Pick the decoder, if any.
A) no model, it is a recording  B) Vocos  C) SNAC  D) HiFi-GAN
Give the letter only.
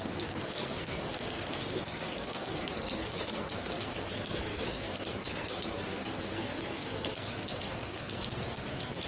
C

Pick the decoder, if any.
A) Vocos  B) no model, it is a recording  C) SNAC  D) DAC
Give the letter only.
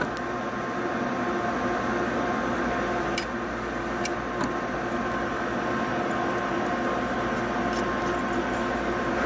B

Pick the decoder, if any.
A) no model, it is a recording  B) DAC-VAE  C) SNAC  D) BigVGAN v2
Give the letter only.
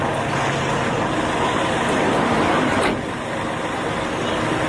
A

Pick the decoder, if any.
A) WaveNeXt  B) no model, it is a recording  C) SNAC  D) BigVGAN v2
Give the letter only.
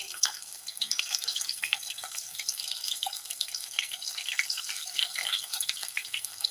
C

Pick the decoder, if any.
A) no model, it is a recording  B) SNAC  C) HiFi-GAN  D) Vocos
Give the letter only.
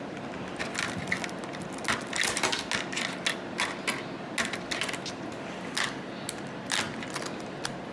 A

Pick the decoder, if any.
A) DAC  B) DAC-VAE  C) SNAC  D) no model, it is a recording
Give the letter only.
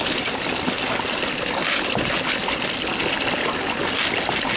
D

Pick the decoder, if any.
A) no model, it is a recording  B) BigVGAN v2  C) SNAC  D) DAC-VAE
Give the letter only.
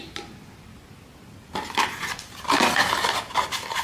A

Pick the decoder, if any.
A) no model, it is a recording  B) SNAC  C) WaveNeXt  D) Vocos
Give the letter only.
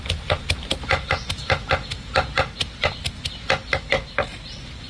A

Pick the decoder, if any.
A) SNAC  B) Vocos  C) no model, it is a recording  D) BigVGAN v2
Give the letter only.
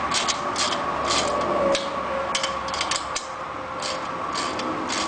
C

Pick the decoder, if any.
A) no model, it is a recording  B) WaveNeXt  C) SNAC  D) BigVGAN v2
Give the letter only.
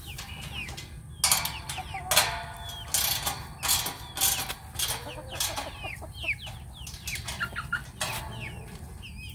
A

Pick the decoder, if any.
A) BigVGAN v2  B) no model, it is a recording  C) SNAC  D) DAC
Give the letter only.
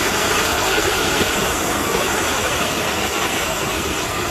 C